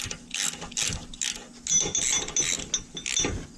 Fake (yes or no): no